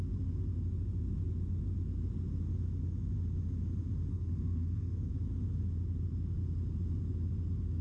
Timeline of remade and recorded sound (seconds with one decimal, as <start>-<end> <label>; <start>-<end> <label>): 0.0-4.1 recorded; 4.1-5.1 remade; 5.1-7.8 recorded